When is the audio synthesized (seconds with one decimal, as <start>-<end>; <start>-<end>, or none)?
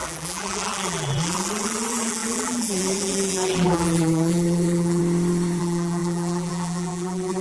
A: 0.0-5.0; 5.6-7.4